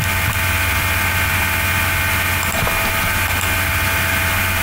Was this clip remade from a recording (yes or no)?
no